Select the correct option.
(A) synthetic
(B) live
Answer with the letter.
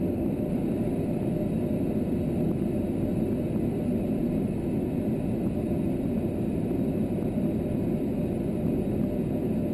B